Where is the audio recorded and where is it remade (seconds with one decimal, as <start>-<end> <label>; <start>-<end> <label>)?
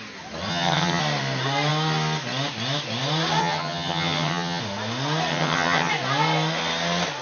0.0-0.5 recorded; 0.5-1.0 remade; 1.0-3.4 recorded; 3.4-4.6 remade; 4.6-5.3 recorded; 5.3-5.9 remade; 5.9-7.2 recorded